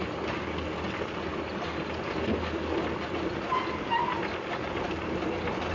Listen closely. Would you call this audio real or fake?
fake